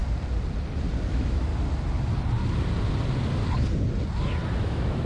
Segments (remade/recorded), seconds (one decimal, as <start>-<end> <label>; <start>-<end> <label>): 0.0-1.1 recorded; 1.1-1.5 remade; 1.5-4.6 recorded; 4.6-5.1 remade